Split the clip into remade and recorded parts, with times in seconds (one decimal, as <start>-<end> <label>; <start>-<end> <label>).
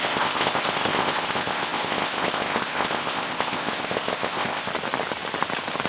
0.0-4.7 remade; 4.7-5.9 recorded